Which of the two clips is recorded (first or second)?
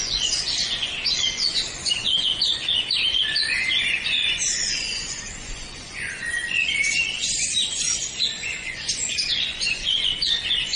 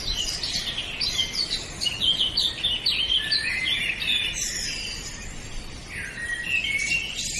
second